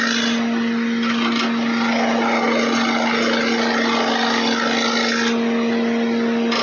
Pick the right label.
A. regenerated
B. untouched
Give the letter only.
B